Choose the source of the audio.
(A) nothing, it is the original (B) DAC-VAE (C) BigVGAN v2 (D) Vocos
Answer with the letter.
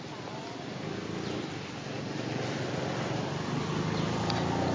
A